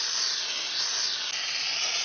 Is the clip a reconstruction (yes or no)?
no